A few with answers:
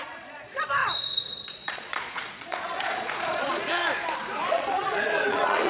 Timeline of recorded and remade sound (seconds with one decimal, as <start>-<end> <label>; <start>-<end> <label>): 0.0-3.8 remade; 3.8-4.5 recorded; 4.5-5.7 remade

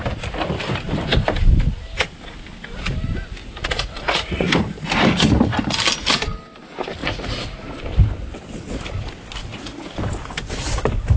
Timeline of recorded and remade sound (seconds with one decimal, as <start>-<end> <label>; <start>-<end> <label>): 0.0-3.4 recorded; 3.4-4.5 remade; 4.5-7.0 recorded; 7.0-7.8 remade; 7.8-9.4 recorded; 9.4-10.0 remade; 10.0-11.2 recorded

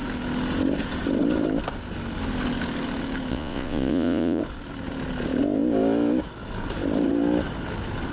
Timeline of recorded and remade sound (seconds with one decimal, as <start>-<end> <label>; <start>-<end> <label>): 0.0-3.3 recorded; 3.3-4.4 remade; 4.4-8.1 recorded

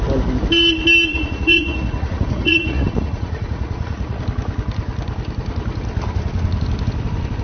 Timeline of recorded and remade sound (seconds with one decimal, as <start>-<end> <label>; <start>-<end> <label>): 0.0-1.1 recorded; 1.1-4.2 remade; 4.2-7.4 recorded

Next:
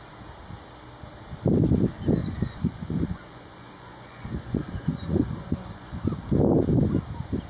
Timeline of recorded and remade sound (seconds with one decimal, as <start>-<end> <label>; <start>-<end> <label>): 0.0-2.2 recorded; 2.2-6.2 remade; 6.2-7.5 recorded